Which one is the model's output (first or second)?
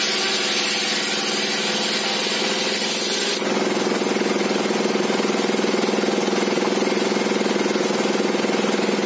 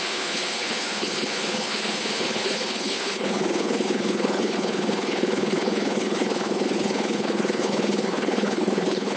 second